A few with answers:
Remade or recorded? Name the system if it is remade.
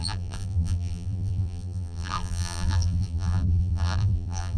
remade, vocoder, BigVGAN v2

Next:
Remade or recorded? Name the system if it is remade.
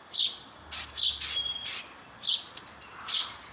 remade, vocoder, BigVGAN v2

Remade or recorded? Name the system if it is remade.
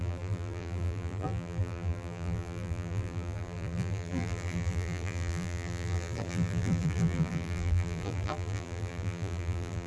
remade, vocoder, BigVGAN v2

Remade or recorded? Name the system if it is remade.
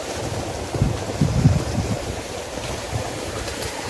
remade, vocoder, BigVGAN v2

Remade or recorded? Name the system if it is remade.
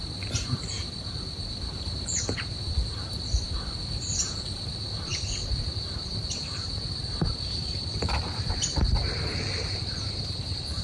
remade, vocoder, BigVGAN v2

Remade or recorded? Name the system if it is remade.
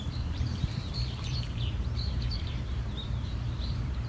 remade, vocoder, BigVGAN v2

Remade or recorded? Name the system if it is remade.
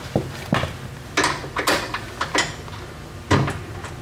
recorded